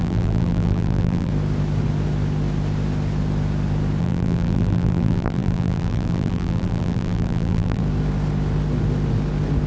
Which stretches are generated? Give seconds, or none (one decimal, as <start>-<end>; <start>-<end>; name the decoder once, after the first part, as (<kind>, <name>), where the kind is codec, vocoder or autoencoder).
0.0-1.3 (vocoder, BigVGAN v2); 4.0-7.8